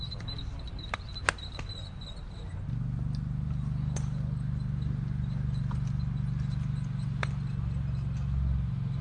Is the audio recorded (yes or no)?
yes